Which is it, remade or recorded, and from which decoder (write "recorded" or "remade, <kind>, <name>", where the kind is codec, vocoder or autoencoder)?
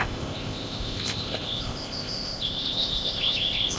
remade, codec, ZipCodec